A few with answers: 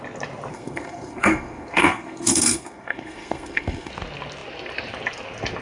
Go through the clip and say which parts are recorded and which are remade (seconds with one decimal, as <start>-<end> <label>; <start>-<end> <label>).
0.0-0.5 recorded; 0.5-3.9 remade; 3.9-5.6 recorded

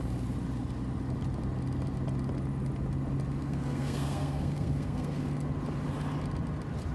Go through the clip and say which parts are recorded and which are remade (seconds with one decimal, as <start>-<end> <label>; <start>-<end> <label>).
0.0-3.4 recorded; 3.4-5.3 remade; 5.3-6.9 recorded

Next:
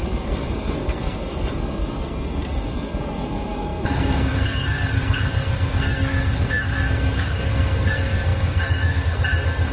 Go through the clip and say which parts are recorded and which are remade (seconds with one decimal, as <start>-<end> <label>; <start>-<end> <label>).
0.0-9.7 remade

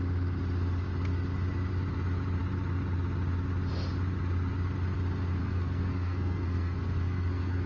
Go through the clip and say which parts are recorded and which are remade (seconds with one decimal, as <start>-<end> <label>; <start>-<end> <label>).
0.0-5.4 recorded; 5.4-7.7 remade

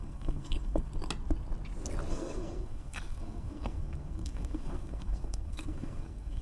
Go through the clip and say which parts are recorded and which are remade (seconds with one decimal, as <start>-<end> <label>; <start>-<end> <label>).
0.0-0.9 remade; 0.9-2.1 recorded; 2.1-6.4 remade